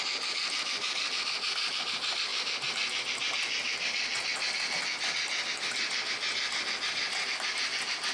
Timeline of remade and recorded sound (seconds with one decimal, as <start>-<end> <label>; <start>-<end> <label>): 0.0-8.1 recorded